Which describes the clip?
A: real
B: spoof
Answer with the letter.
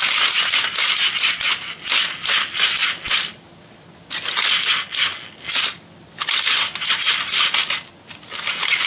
A